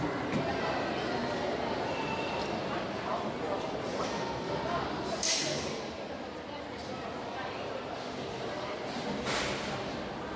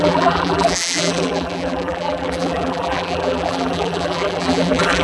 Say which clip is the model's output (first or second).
second